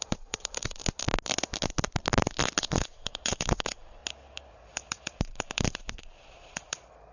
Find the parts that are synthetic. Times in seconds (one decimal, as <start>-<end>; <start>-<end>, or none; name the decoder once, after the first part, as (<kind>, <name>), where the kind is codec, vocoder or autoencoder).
0.0-0.8 (vocoder, Vocos); 2.6-4.0; 4.5-7.1